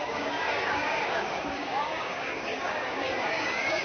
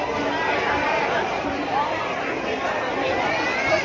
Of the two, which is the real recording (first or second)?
second